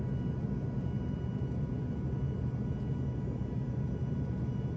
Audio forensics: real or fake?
real